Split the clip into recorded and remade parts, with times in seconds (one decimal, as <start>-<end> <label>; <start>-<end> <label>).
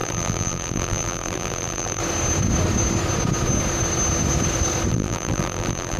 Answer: 0.0-2.0 remade; 2.0-4.9 recorded; 4.9-6.0 remade